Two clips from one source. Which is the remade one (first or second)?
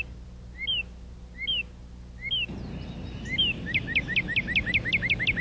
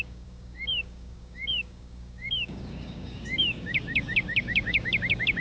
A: second